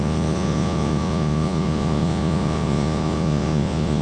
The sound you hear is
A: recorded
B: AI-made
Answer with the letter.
B